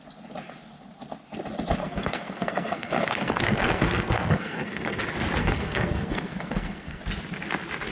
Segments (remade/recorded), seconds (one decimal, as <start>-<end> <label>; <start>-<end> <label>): 0.0-1.8 recorded; 1.8-5.0 remade; 5.0-5.4 recorded; 5.4-7.0 remade; 7.0-7.9 recorded